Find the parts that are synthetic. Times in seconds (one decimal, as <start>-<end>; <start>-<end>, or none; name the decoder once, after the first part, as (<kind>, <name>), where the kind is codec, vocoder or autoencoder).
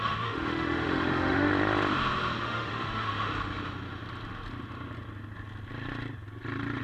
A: 0.0-1.5 (autoencoder, DAC-VAE); 2.4-3.3